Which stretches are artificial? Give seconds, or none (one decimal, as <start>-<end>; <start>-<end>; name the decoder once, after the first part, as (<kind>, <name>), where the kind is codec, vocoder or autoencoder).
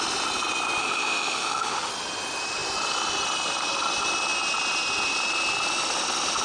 0.8-1.9 (autoencoder, DAC-VAE)